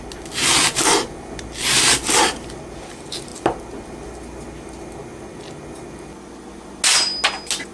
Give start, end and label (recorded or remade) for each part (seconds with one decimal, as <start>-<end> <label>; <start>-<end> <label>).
0.0-7.7 recorded